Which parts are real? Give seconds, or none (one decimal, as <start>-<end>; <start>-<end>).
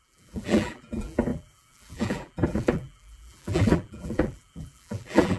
none